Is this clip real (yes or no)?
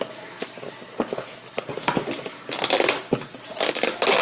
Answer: yes